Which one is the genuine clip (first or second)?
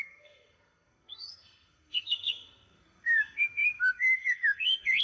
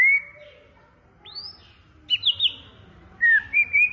second